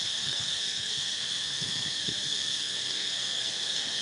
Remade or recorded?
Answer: remade